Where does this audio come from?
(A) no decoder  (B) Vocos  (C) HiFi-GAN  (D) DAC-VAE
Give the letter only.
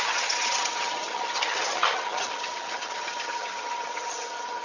C